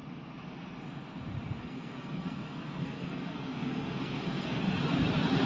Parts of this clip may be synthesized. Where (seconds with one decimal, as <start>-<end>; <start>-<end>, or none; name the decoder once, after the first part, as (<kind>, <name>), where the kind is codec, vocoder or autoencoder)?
1.6-4.6 (codec, SNAC)